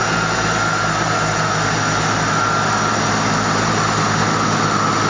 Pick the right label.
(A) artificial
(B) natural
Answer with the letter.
B